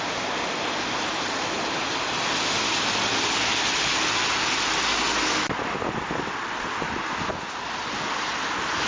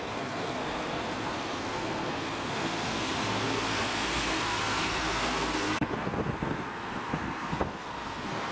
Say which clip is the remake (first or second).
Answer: second